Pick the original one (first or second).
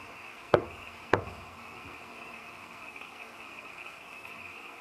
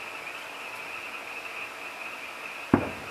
second